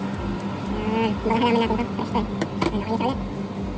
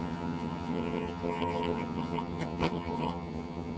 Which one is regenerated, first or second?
second